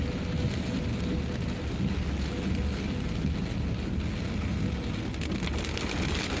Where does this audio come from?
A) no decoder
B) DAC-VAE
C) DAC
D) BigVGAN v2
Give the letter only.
A